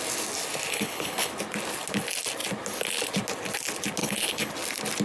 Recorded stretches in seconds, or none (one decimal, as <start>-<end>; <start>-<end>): 0.0-0.7; 1.3-4.0; 4.5-5.0

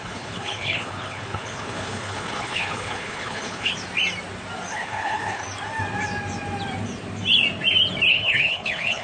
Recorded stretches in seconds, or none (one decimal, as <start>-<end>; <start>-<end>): 3.7-4.7; 5.4-8.1